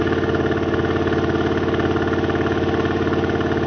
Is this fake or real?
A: real